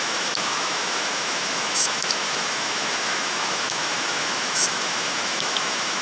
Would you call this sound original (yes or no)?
no